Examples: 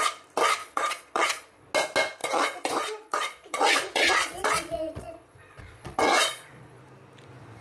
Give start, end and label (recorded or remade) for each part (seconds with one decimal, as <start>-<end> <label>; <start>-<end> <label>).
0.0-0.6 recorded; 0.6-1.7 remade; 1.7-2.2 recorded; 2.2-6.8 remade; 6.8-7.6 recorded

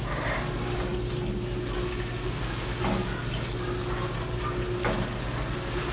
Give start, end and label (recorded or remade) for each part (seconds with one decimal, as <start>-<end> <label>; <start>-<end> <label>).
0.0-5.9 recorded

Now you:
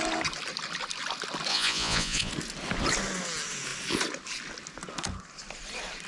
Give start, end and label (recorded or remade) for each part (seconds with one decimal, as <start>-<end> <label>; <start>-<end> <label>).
0.0-1.5 recorded; 1.5-2.3 remade; 2.3-6.1 recorded

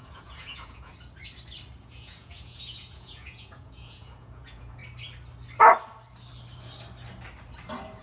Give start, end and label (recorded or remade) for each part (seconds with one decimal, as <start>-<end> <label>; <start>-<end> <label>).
0.0-0.9 remade; 0.9-1.8 recorded; 1.8-4.8 remade; 4.8-8.0 recorded